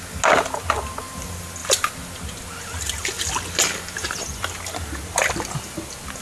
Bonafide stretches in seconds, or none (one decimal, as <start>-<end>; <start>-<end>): 0.0-6.2